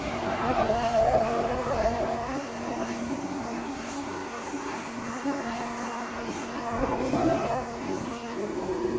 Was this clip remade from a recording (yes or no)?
yes